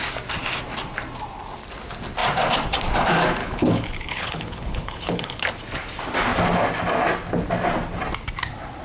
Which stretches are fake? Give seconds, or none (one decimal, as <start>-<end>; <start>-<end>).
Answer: 3.4-5.5